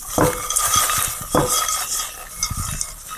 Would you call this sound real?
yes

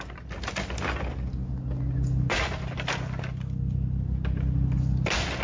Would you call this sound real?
yes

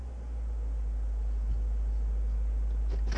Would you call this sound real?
yes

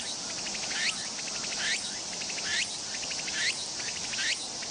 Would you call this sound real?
yes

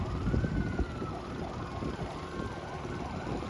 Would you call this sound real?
yes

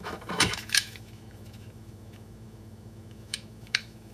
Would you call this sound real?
no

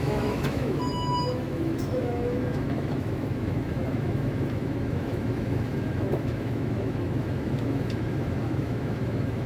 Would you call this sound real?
no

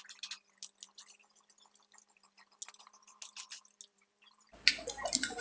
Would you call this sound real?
yes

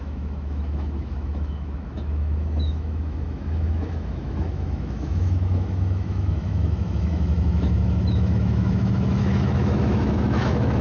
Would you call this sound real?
no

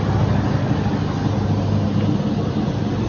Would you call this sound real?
yes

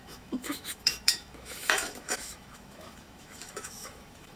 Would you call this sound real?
no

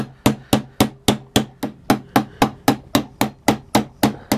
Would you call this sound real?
yes